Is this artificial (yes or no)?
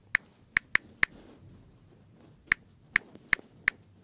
no